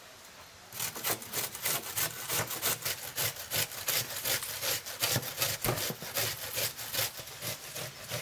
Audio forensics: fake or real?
real